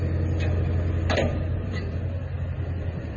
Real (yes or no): yes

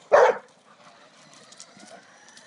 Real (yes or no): yes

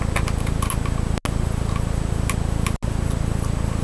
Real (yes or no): yes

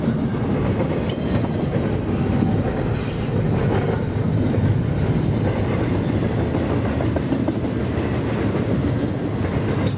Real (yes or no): yes